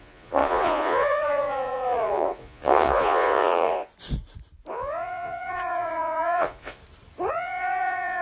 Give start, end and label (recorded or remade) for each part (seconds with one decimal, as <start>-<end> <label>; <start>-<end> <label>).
0.0-3.9 remade; 3.9-4.7 recorded; 4.7-6.8 remade; 6.8-7.3 recorded; 7.3-8.2 remade